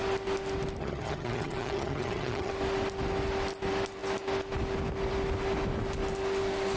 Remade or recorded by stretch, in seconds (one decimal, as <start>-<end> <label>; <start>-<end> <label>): 0.0-0.8 recorded; 0.8-2.5 remade; 2.5-6.8 recorded